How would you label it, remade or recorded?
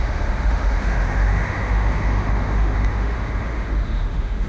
remade